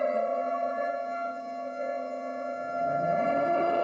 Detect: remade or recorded remade